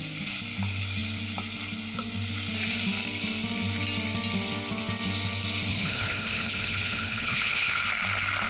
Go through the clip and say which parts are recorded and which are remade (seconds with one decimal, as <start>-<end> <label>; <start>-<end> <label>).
0.0-5.7 recorded; 5.7-7.8 remade; 7.8-8.5 recorded